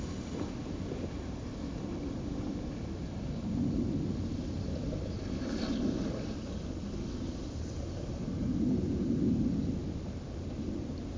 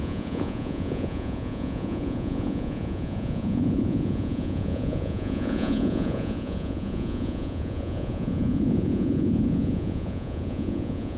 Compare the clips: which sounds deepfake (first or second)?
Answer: second